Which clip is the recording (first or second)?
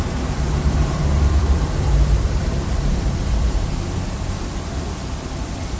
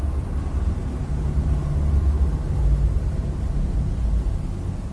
second